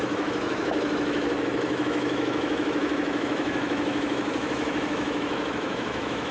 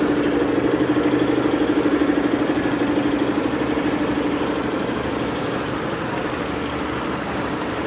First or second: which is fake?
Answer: first